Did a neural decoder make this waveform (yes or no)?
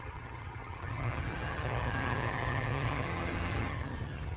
yes